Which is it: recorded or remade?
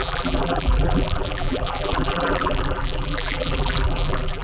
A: remade